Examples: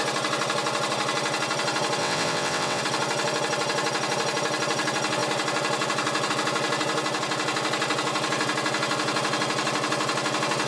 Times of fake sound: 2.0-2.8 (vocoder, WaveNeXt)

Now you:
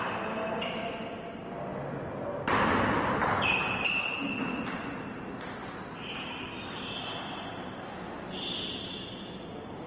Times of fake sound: none